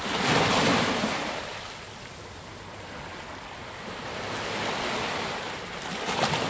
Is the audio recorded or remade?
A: recorded